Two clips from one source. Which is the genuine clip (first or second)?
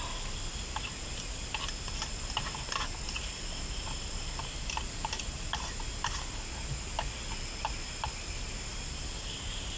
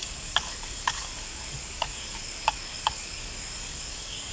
first